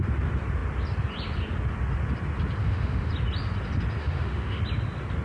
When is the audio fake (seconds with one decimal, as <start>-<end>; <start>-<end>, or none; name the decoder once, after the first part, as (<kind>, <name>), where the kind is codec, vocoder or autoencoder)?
2.6-3.1 (autoencoder, DAC-VAE); 4.0-4.6